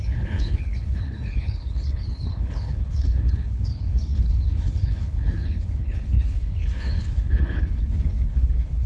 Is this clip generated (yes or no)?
yes